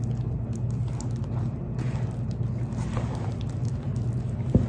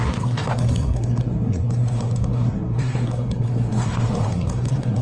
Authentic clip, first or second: first